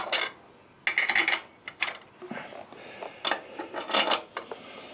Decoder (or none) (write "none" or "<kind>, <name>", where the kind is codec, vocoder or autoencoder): none